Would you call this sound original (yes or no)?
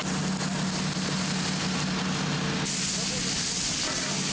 yes